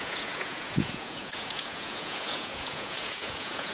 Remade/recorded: remade